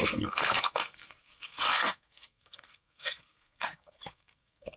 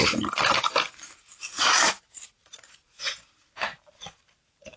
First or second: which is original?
second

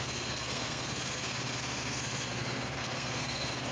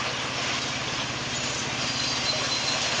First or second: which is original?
second